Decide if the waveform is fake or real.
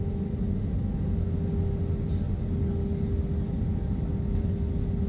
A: real